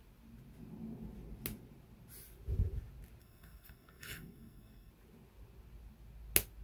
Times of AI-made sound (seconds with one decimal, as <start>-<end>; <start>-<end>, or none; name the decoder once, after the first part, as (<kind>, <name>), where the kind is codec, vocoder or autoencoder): 3.2-4.9 (codec, SNAC)

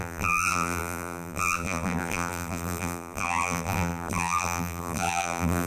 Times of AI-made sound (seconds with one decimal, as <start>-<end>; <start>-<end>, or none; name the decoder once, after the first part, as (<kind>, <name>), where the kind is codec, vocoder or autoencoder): 0.0-5.7 (vocoder, BigVGAN v2)